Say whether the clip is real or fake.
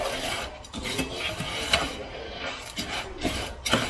real